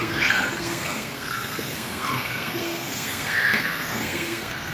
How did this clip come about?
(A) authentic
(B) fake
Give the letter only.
B